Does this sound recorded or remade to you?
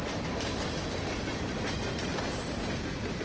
recorded